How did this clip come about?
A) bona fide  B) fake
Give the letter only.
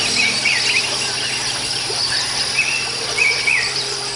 B